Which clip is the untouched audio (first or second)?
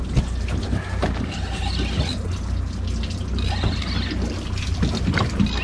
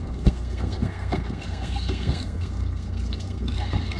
first